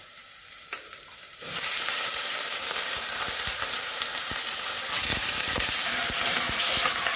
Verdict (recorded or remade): remade